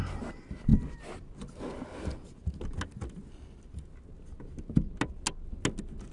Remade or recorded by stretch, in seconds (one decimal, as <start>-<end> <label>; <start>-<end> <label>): 0.0-6.1 recorded